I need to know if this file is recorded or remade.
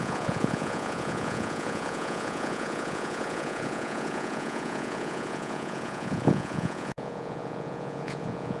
remade